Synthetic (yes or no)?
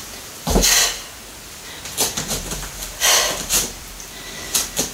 yes